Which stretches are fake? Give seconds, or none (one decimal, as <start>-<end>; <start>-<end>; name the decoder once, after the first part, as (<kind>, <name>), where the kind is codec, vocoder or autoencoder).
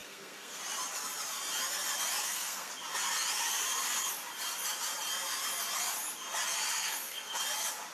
0.0-0.6 (codec, SNAC); 2.2-2.7; 6.7-7.4